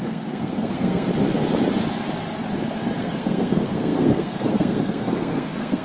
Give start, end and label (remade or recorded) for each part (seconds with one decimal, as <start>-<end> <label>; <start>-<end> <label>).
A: 0.0-1.1 remade; 1.1-3.0 recorded; 3.0-5.8 remade